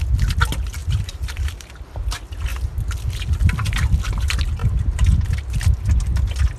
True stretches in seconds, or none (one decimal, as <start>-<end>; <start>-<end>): 0.0-0.8; 2.0-4.6; 5.8-6.6